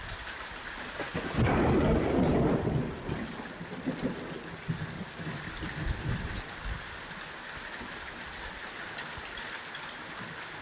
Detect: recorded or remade recorded